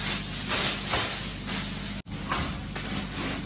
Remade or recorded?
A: recorded